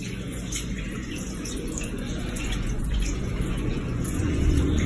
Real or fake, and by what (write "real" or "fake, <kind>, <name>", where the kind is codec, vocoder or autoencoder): fake, vocoder, Vocos